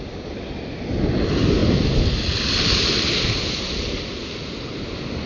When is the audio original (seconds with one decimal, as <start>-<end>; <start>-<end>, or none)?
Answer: 0.0-5.3